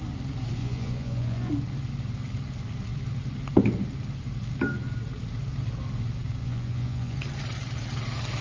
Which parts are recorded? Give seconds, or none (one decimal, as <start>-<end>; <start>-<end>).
0.0-0.6; 1.5-6.4; 7.2-8.4